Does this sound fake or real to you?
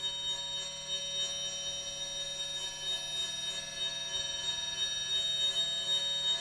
real